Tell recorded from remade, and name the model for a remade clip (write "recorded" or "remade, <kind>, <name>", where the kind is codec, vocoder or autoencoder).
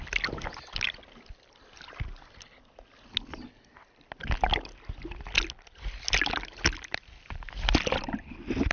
recorded